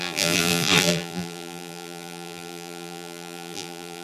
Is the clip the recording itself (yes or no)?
no